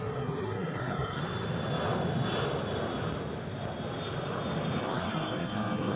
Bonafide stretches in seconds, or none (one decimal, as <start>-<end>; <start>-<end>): 1.2-4.8